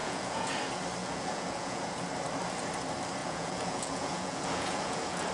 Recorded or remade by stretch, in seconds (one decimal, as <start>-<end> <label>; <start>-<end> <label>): 0.0-0.5 remade; 0.5-1.0 recorded; 1.0-2.0 remade; 2.0-3.2 recorded; 3.2-5.3 remade